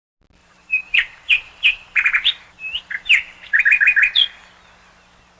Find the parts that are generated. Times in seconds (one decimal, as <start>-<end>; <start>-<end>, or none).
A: 0.4-3.6